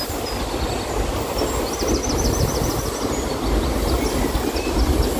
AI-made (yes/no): no